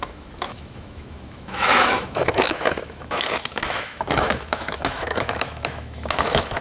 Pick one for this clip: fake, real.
fake